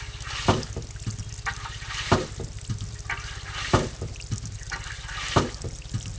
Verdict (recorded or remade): recorded